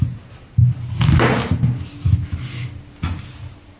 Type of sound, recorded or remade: recorded